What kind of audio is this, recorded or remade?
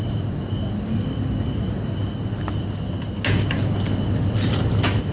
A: recorded